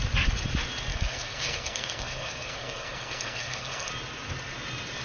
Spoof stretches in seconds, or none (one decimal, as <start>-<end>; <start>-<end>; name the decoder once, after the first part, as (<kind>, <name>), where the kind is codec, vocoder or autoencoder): 0.9-3.9 (codec, SNAC)